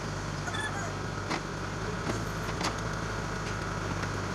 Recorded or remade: recorded